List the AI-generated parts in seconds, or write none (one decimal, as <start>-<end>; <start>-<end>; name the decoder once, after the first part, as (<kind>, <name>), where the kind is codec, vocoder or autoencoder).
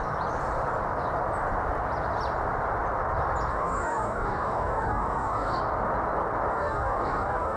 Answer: 3.5-5.6 (codec, DAC); 6.5-7.6